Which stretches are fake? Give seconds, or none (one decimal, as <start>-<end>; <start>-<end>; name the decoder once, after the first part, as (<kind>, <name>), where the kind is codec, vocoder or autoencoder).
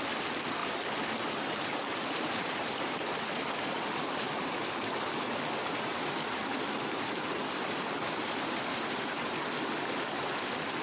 0.6-4.1 (vocoder, BigVGAN v2); 5.9-7.7